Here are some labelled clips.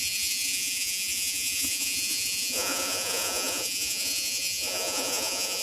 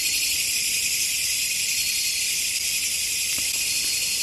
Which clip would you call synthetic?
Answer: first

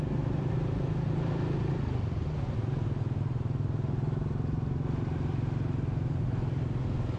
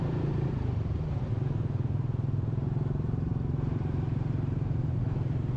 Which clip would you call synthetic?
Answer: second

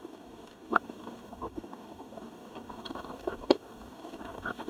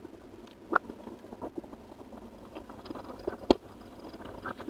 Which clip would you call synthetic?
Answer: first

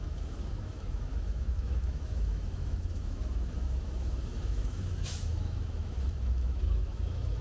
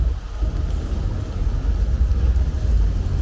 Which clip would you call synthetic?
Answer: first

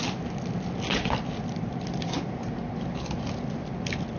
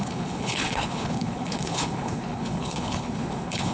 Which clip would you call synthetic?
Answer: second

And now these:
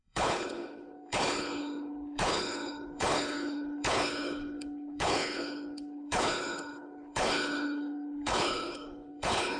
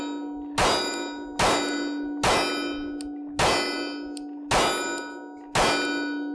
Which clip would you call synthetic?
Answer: first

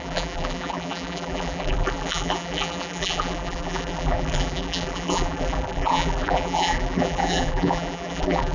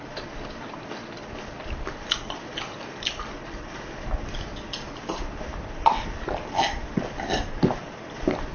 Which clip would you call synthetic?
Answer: first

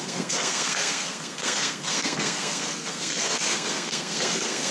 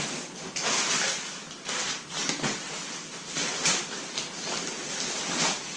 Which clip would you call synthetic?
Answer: first